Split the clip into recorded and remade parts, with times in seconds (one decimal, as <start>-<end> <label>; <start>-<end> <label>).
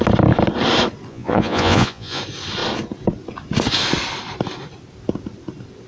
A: 0.0-1.1 recorded; 1.1-2.2 remade; 2.2-5.9 recorded